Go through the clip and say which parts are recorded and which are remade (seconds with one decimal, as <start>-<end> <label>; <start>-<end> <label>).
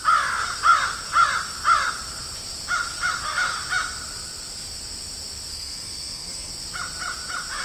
0.0-5.5 recorded; 5.5-6.5 remade; 6.5-7.6 recorded